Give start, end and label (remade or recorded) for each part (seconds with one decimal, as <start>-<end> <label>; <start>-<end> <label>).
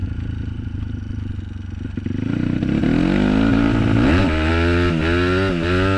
0.0-1.0 remade; 1.0-3.5 recorded; 3.5-4.5 remade; 4.5-6.0 recorded